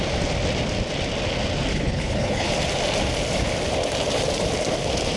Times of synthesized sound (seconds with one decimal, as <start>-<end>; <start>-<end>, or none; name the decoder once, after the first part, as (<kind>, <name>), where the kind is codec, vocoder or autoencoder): 1.7-2.5 (codec, HILCodec)